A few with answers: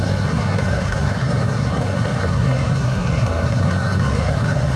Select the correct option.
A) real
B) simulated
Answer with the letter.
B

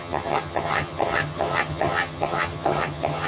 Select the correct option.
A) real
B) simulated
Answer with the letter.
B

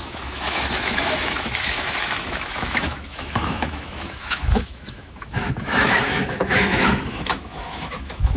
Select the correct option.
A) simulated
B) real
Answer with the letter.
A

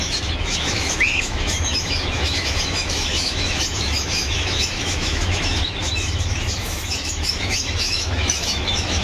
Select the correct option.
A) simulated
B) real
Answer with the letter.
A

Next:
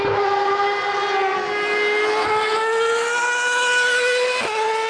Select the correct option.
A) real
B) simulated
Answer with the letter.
A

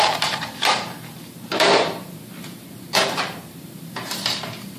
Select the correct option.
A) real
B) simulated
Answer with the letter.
B